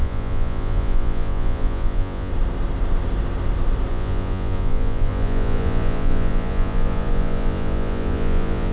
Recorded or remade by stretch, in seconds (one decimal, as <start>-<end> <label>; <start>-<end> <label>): 0.0-2.3 remade; 2.3-3.9 recorded; 3.9-8.7 remade